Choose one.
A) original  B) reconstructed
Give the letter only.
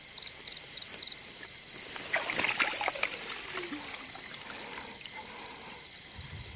A